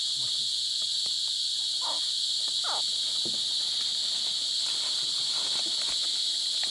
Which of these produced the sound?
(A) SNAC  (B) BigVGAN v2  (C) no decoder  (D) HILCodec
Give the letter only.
C